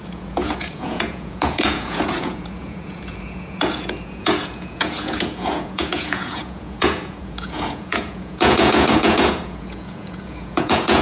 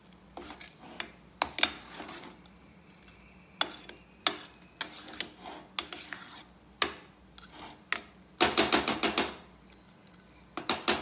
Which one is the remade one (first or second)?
first